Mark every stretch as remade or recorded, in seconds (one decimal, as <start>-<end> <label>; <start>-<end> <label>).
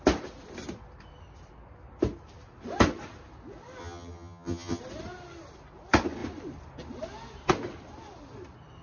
0.0-3.8 recorded; 3.8-4.8 remade; 4.8-8.8 recorded